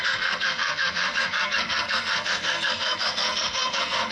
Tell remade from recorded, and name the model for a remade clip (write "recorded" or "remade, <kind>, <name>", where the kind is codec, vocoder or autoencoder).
remade, codec, SNAC